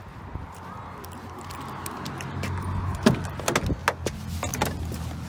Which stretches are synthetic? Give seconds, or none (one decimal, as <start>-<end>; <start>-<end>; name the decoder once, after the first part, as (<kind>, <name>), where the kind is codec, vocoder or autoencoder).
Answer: none